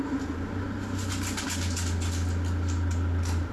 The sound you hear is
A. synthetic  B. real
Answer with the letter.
B